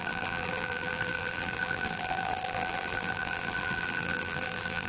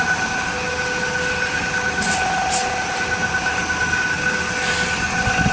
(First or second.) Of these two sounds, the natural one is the second